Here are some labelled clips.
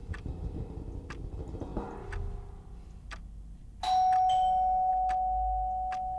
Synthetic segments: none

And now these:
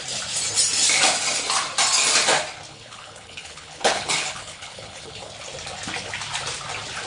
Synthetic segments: 2.7-5.3